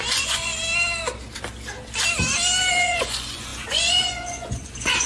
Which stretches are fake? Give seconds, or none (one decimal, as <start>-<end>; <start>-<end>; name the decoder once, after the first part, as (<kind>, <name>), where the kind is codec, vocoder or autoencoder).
0.0-0.5 (vocoder, Vocos); 2.7-5.1